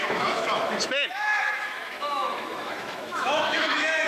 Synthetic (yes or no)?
yes